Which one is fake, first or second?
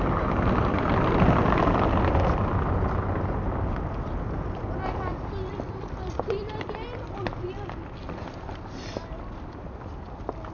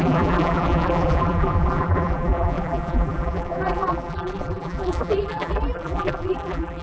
second